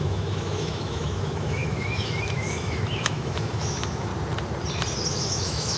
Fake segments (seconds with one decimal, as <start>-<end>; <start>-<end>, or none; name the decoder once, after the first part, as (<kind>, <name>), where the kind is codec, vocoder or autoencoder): 0.0-4.1 (autoencoder, DAC-VAE); 5.1-5.8

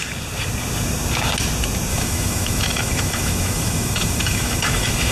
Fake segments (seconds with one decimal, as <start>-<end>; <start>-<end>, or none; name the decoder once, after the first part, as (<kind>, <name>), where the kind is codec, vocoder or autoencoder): 1.9-5.1 (autoencoder, DAC-VAE)

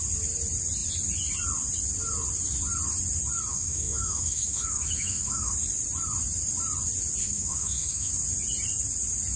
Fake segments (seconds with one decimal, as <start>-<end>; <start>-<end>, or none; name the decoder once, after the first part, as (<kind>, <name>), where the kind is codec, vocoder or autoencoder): 3.5-5.5 (autoencoder, DAC-VAE); 7.2-8.1